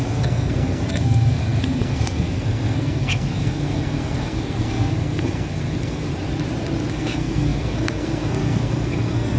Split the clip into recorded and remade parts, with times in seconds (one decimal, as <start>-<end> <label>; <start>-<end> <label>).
0.0-6.1 remade; 6.1-6.9 recorded; 6.9-9.4 remade